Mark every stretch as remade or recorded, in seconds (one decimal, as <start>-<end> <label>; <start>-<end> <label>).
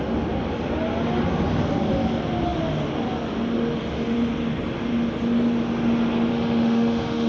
0.0-6.3 recorded; 6.3-7.3 remade